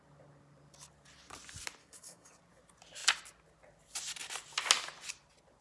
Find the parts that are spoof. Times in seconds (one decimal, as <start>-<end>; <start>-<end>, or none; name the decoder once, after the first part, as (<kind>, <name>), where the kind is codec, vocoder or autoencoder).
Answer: 1.8-2.4 (codec, DAC)